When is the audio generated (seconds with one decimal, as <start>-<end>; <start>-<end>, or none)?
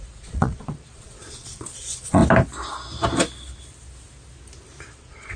0.0-2.2; 4.9-5.4